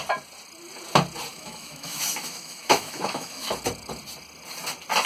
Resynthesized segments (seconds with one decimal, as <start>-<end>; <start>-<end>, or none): 1.3-3.5